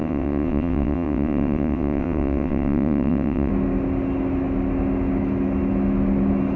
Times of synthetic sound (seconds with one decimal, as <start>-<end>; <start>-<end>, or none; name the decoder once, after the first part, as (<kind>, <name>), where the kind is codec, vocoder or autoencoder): 0.0-3.5 (vocoder, WaveNeXt)